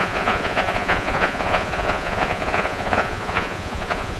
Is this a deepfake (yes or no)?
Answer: yes